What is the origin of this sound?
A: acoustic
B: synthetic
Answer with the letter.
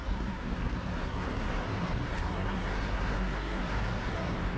B